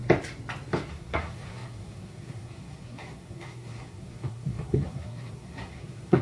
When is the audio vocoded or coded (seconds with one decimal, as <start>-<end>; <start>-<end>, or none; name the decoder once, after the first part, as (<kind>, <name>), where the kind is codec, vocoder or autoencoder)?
0.9-6.2 (codec, SNAC)